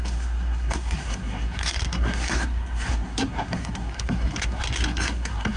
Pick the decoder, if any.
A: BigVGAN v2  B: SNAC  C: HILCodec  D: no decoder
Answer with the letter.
B